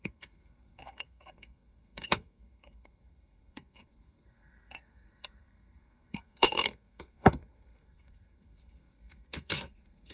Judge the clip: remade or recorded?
remade